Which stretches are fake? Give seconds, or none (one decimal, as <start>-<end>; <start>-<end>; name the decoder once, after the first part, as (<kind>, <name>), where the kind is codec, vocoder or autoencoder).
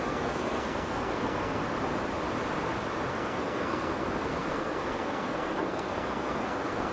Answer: 0.0-1.6 (codec, SNAC); 3.1-6.9